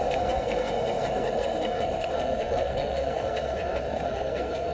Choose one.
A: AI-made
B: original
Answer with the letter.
A